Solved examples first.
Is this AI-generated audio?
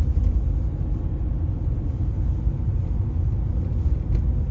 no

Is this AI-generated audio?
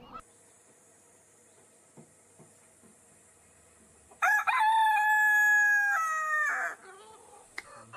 no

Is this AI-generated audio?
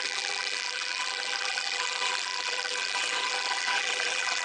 yes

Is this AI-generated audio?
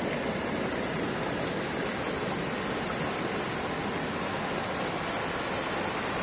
no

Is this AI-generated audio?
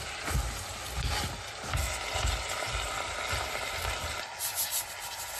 no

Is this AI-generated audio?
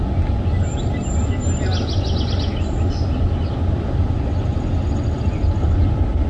no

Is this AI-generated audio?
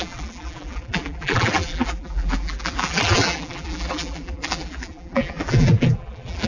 yes